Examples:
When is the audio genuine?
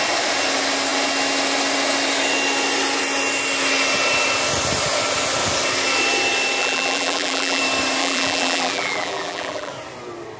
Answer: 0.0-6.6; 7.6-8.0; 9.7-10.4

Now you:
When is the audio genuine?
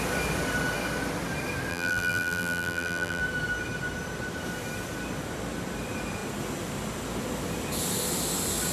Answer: 0.0-1.7; 3.2-8.7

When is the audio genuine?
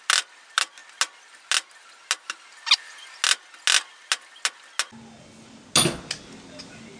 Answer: 0.0-7.0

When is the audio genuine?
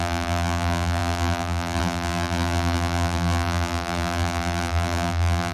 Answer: none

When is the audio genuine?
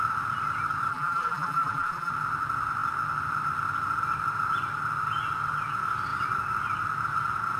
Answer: 0.0-0.9; 2.1-7.6